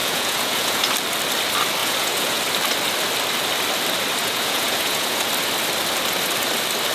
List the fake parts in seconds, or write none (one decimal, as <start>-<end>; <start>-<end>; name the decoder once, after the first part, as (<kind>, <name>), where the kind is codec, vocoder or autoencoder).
0.0-0.8 (vocoder, Vocos); 1.8-2.4; 4.2-5.3